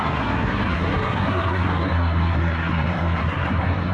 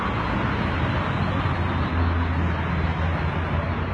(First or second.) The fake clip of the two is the first